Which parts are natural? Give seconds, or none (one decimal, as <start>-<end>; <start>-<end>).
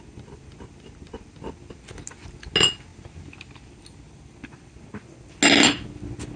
0.0-6.4